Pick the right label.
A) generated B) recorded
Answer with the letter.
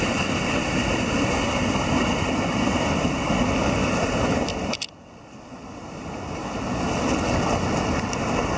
B